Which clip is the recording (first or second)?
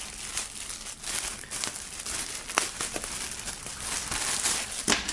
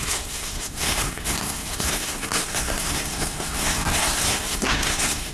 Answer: first